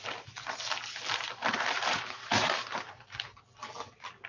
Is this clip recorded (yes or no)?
yes